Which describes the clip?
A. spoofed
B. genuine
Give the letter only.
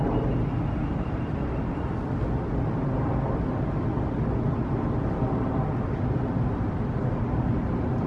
B